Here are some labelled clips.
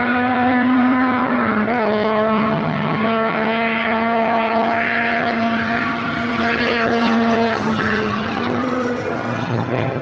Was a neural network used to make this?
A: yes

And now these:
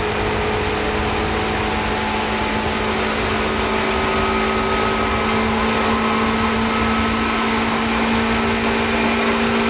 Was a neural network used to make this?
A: no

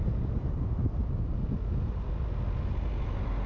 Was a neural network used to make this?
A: no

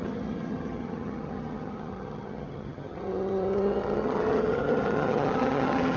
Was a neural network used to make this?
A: yes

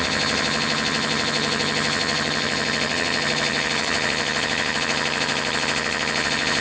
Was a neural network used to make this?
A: yes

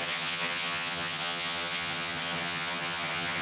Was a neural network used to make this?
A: yes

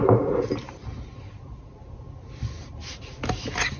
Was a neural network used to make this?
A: no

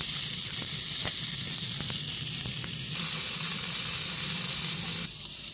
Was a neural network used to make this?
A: no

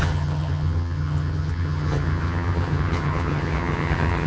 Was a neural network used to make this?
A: yes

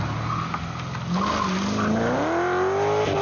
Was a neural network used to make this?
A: no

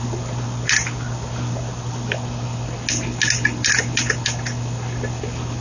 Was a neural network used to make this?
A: no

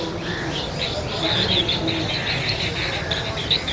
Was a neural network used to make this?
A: no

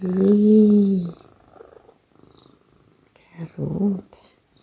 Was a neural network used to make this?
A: no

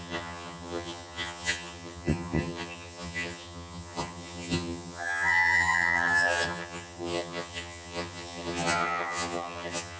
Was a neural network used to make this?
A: yes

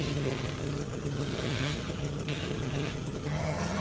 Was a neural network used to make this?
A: yes